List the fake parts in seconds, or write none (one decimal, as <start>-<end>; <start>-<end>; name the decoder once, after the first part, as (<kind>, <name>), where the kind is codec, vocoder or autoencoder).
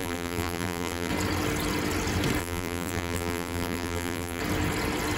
0.0-1.1 (vocoder, BigVGAN v2); 2.4-4.4